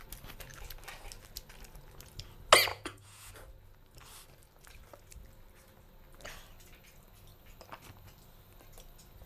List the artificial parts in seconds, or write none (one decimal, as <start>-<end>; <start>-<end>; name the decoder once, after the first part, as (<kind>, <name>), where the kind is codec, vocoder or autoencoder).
2.7-3.3 (vocoder, Vocos)